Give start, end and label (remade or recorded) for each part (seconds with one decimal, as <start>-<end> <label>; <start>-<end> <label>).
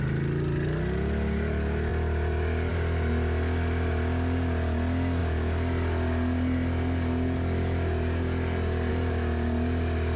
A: 0.0-10.2 recorded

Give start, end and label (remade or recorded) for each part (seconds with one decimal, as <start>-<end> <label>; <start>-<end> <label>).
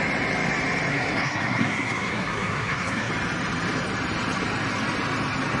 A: 0.0-0.9 recorded; 0.9-3.1 remade; 3.1-5.6 recorded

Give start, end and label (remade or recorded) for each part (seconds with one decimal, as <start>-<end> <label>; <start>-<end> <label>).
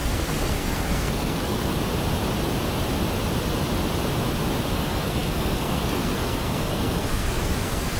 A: 0.0-1.7 remade; 1.7-4.7 recorded; 4.7-8.0 remade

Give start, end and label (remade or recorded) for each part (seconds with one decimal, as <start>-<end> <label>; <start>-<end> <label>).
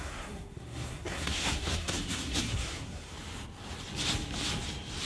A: 0.0-3.1 remade; 3.1-5.1 recorded